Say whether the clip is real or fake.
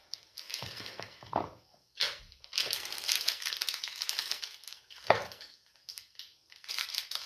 fake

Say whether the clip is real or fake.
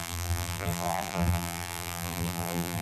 fake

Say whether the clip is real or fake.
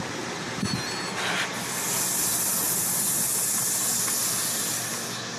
real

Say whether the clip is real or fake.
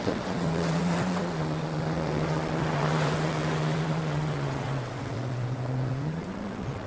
fake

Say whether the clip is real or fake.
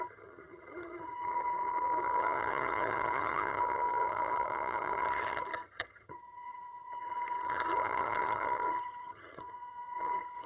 fake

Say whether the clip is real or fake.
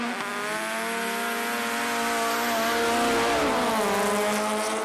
real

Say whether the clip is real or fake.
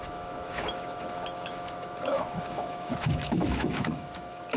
fake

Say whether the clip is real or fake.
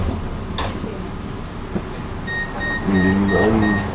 real